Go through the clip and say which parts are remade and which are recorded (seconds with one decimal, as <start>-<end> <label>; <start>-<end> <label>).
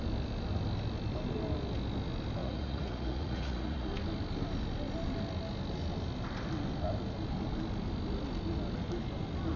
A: 0.0-2.4 recorded; 2.4-3.9 remade; 3.9-9.6 recorded